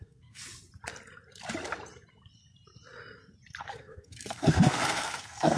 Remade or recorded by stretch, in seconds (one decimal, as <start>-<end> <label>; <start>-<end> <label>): 0.0-0.4 remade; 0.4-3.6 recorded; 3.6-5.6 remade